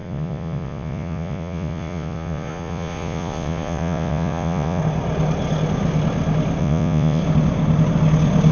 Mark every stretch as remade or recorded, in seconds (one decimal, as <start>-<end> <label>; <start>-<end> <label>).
0.0-4.8 remade; 4.8-6.6 recorded; 6.6-7.2 remade; 7.2-8.5 recorded